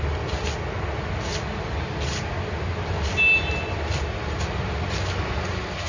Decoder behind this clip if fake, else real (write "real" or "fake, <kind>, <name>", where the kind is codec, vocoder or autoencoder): real